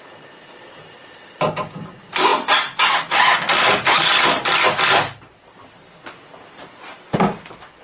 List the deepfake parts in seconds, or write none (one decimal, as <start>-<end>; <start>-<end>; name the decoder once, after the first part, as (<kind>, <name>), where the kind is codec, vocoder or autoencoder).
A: none